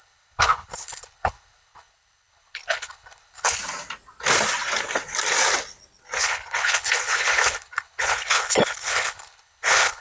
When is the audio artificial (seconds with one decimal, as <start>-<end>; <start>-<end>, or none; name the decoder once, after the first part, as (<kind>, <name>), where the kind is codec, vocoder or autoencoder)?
0.0-3.6 (codec, HILCodec); 6.2-10.0